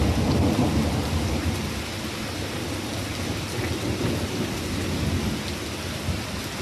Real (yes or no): yes